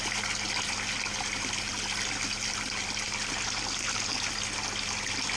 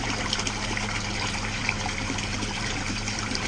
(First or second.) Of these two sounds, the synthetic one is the second